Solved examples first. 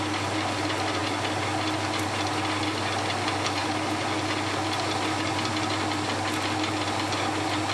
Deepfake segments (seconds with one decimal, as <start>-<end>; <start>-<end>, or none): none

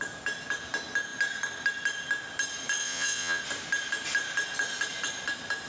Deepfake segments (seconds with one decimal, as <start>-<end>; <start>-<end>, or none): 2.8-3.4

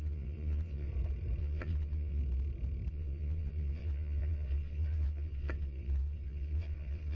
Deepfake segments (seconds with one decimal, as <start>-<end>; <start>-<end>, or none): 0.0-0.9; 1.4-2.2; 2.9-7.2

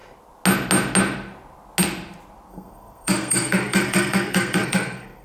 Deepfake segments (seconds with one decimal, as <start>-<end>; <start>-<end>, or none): 2.5-5.2